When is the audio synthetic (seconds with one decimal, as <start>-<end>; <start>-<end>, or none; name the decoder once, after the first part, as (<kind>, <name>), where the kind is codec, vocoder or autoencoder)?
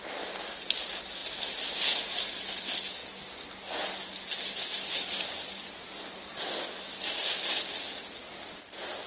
none